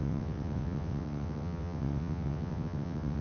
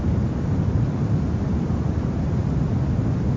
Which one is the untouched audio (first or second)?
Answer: second